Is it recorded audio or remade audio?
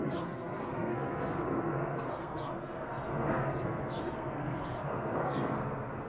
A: remade